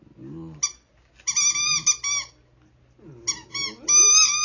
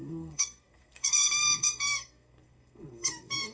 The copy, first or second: second